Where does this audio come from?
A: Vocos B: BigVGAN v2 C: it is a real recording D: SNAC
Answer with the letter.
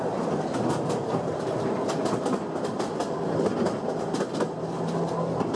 C